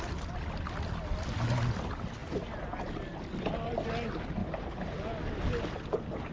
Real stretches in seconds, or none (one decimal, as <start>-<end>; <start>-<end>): 0.0-6.3